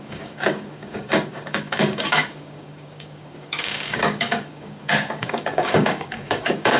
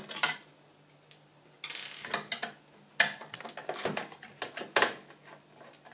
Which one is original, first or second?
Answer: second